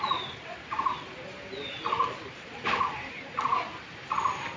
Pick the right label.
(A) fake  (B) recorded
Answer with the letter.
B